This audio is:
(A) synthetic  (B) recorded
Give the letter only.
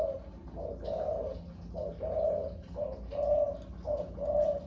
B